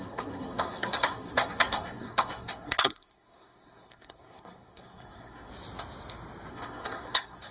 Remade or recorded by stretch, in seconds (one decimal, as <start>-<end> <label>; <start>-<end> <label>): 0.0-5.5 remade; 5.5-6.5 recorded; 6.5-7.5 remade